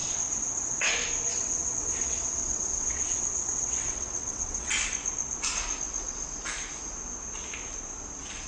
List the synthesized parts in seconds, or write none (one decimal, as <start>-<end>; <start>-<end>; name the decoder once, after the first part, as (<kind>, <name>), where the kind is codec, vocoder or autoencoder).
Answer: 0.0-0.9 (vocoder, WaveNeXt); 1.3-4.7